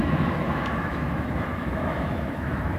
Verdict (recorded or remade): remade